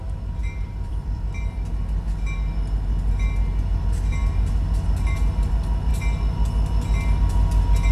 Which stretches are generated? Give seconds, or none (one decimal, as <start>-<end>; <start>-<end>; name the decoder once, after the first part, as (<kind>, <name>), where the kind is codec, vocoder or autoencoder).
0.4-1.3 (vocoder, BigVGAN v2)